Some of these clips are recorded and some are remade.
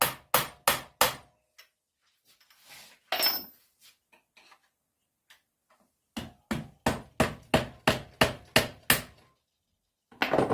recorded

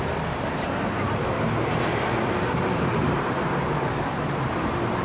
remade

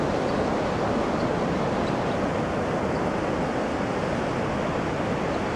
recorded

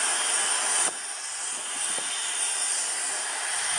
recorded